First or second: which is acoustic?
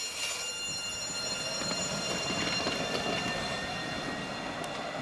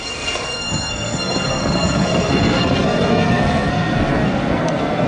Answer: first